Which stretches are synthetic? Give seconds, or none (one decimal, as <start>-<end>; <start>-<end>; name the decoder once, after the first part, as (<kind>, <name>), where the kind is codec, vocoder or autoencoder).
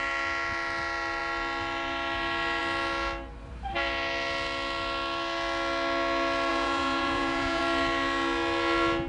6.5-7.6 (vocoder, Vocos)